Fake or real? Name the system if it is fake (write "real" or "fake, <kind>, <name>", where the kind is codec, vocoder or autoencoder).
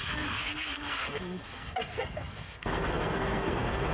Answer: fake, codec, SNAC